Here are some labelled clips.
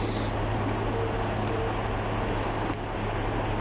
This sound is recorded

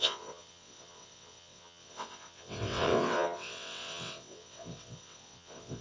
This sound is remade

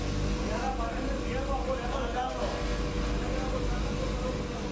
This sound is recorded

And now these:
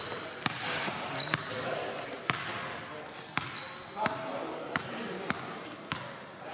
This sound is recorded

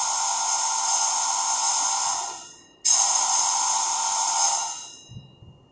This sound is recorded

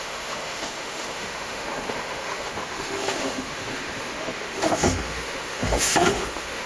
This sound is remade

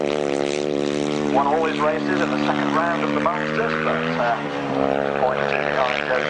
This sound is recorded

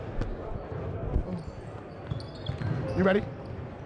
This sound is recorded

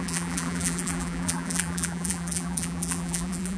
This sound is remade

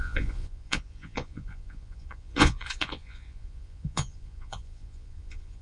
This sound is remade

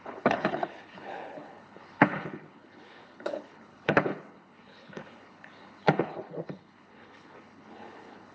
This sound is remade